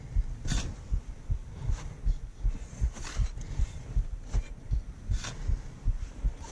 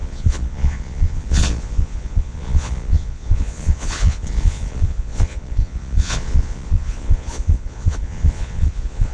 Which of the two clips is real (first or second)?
first